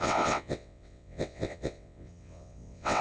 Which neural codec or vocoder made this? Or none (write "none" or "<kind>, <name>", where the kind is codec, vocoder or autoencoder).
vocoder, WaveNeXt